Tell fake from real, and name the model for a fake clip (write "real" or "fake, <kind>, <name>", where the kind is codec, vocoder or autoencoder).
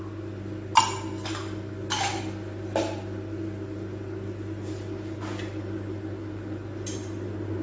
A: real